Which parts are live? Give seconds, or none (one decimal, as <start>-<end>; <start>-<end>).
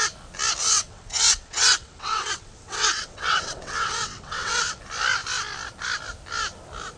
0.0-0.6; 4.8-7.0